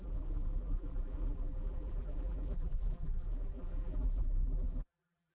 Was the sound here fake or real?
fake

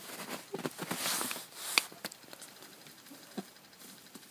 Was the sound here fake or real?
real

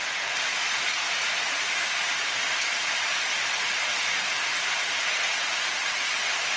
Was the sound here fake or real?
real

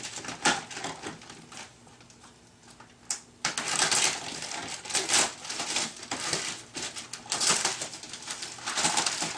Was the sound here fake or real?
real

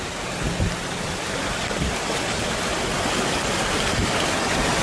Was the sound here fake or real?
real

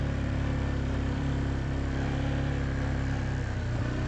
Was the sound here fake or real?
fake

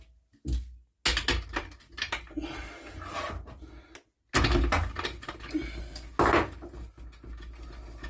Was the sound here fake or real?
real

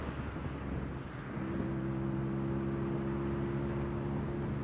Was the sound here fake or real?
real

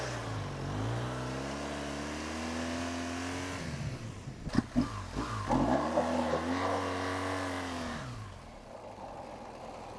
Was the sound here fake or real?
real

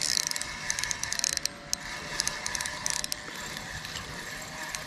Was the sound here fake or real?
real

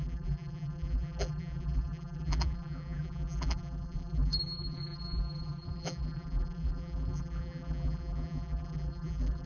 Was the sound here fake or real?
fake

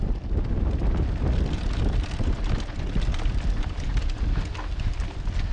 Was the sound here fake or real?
real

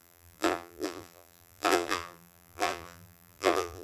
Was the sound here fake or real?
fake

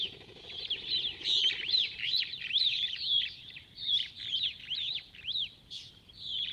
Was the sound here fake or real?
fake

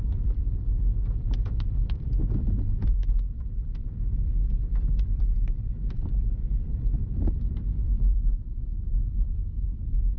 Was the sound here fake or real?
fake